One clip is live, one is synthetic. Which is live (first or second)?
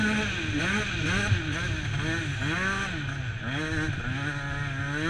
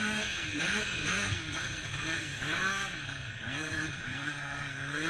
first